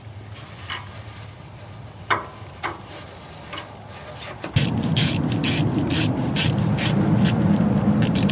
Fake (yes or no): yes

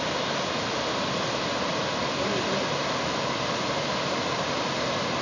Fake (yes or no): no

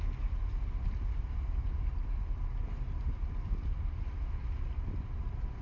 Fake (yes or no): no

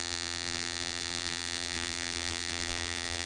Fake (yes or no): yes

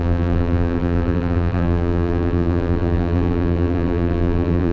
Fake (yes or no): yes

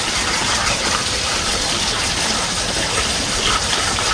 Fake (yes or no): no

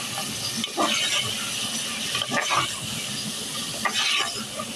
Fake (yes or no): no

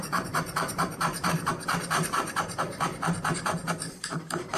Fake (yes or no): yes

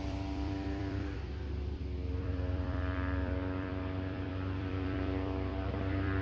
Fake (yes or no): yes